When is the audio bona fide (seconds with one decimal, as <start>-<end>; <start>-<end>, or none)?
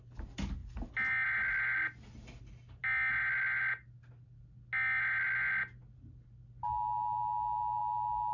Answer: 0.0-8.3